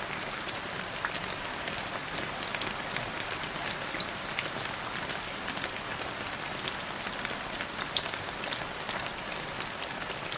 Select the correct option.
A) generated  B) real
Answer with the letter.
B